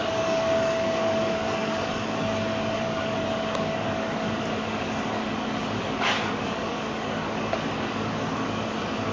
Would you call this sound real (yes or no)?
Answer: no